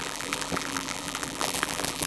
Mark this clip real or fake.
fake